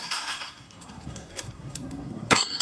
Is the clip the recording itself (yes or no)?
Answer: no